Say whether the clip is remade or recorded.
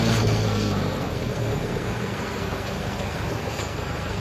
remade